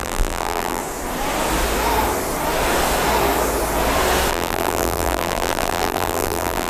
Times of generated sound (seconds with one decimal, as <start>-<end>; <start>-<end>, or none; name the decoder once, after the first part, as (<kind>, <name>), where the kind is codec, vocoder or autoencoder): 0.0-0.8 (vocoder, BigVGAN v2); 4.3-6.7